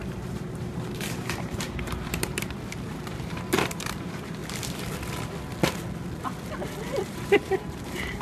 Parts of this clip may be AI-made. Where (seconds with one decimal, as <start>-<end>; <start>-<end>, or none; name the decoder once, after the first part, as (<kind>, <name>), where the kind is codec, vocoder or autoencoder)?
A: 0.0-2.3 (vocoder, BigVGAN v2); 2.8-4.4; 6.8-8.2